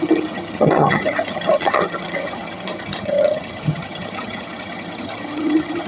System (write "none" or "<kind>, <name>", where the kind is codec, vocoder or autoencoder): vocoder, HiFi-GAN